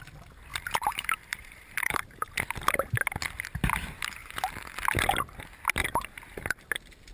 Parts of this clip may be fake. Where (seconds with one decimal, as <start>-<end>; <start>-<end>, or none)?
0.5-2.4; 4.2-4.7; 5.8-6.6